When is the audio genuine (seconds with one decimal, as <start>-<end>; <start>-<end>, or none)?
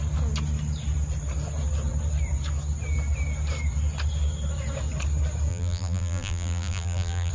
0.0-5.5